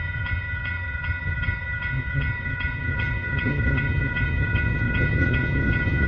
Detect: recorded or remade remade